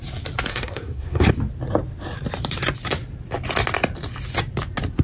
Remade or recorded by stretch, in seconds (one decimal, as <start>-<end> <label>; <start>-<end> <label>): 0.0-0.5 recorded; 0.5-1.3 remade; 1.3-5.0 recorded